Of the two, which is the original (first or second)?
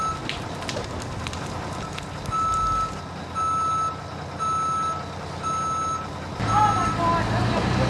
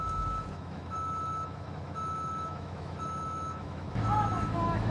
first